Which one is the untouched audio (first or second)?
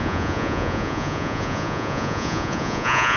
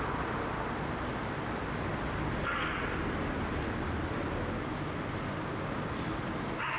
second